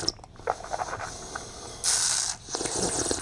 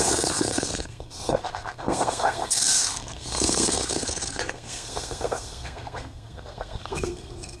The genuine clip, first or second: first